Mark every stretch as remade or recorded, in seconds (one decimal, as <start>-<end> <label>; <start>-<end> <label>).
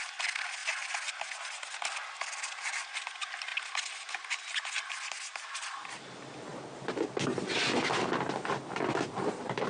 0.0-9.7 recorded